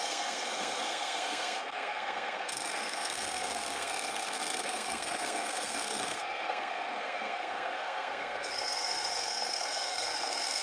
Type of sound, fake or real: fake